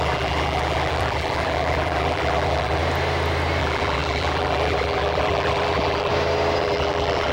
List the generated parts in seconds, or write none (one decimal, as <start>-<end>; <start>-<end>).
0.0-2.8; 3.6-6.1; 6.6-7.3